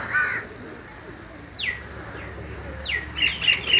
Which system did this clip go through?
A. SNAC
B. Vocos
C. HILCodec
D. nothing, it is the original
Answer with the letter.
D